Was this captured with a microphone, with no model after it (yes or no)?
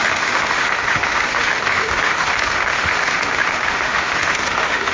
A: no